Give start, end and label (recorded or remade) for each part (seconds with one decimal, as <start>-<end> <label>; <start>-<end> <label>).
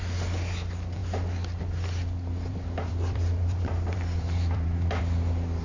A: 0.0-1.0 recorded; 1.0-1.6 remade; 1.6-2.5 recorded; 2.5-5.0 remade; 5.0-5.6 recorded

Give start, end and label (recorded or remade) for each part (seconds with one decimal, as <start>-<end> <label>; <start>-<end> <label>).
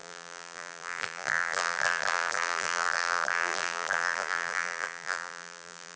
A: 0.0-6.0 remade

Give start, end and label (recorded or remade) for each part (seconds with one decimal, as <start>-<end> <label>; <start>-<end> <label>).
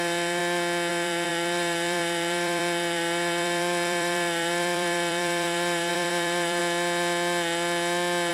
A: 0.0-0.4 remade; 0.4-0.9 recorded; 0.9-6.6 remade; 6.6-8.3 recorded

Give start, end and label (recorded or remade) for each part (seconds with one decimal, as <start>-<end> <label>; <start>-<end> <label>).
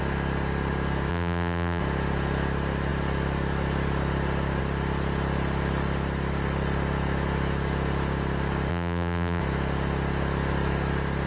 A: 0.0-1.1 recorded; 1.1-1.8 remade; 1.8-8.7 recorded; 8.7-9.4 remade; 9.4-11.3 recorded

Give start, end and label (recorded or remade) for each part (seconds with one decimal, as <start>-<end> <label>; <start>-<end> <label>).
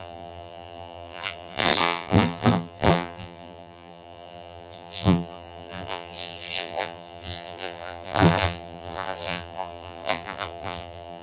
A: 0.0-11.2 remade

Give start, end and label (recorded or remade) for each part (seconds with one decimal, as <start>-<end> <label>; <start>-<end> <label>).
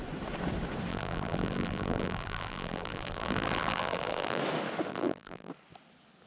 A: 0.0-0.9 recorded; 0.9-4.4 remade; 4.4-4.9 recorded; 4.9-5.5 remade; 5.5-6.3 recorded